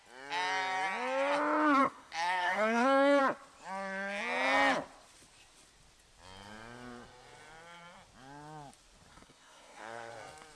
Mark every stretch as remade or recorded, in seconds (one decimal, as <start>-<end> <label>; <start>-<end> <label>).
0.0-1.8 recorded; 1.8-3.2 remade; 3.2-9.1 recorded; 9.1-10.1 remade; 10.1-10.6 recorded